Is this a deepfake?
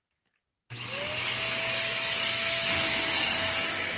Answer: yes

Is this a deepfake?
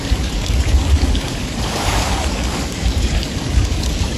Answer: yes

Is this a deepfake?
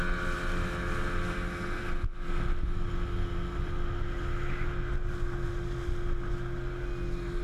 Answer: no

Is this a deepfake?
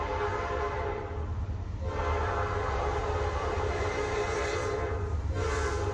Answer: no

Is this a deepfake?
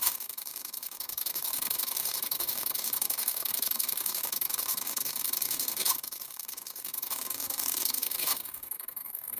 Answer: yes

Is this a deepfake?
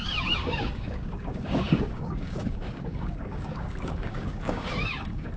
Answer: yes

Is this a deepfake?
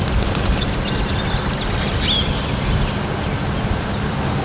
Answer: no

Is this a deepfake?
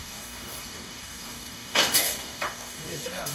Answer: yes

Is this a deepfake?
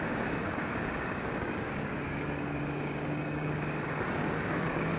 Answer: yes